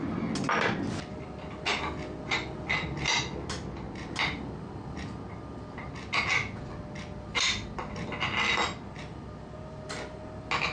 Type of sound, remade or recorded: recorded